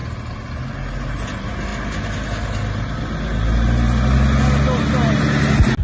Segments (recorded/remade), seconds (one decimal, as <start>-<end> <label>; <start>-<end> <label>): 0.0-5.8 recorded